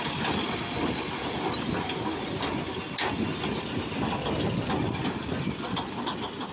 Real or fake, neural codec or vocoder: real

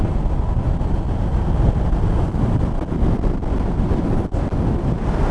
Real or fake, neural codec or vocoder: real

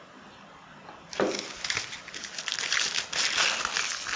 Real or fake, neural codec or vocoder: real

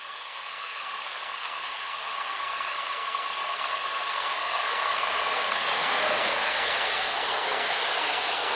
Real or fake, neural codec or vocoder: fake, codec, SNAC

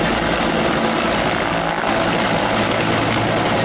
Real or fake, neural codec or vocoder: real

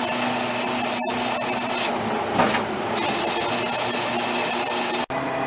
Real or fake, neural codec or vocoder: real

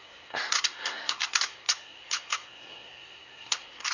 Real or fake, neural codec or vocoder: fake, codec, SNAC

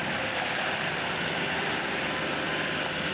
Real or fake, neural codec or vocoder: real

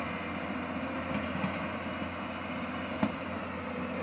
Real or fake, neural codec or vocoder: real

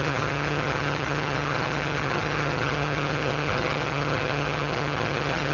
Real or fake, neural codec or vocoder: fake, vocoder, HiFi-GAN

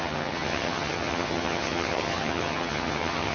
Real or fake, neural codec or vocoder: fake, vocoder, HiFi-GAN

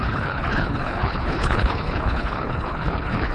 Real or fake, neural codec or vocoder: fake, codec, HILCodec